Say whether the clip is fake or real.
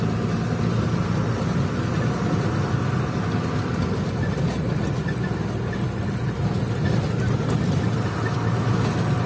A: real